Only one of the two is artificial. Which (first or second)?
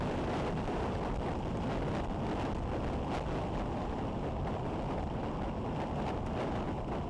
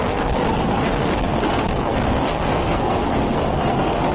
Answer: second